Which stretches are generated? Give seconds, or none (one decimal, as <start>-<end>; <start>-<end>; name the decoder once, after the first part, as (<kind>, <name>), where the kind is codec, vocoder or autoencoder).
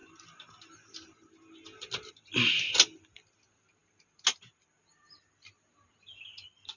none